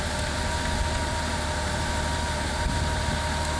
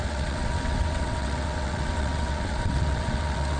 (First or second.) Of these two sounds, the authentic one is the first